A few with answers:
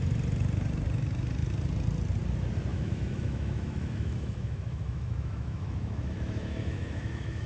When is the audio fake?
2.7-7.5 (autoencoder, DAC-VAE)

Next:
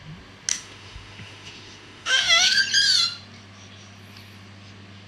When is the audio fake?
0.5-2.6 (autoencoder, DAC-VAE)

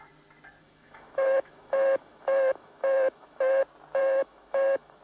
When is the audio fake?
0.6-3.6 (autoencoder, DAC-VAE); 4.0-5.0

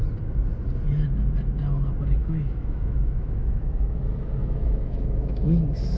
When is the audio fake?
2.2-4.0 (autoencoder, DAC-VAE); 4.4-6.0

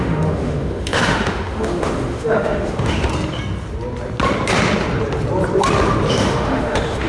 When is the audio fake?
0.0-3.1 (autoencoder, DAC-VAE); 6.1-7.1

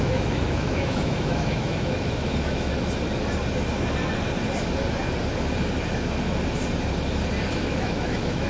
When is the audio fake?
0.0-2.7 (autoencoder, DAC-VAE); 7.5-8.5

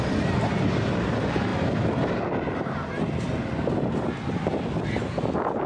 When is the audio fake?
none